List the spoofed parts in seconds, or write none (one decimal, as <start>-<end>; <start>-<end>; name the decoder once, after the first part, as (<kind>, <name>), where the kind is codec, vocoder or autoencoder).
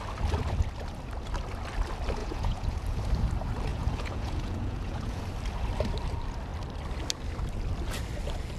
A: 2.2-3.0 (vocoder, Vocos); 3.7-5.2